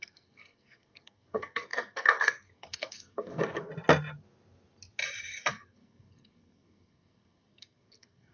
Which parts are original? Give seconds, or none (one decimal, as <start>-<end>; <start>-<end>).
3.7-5.5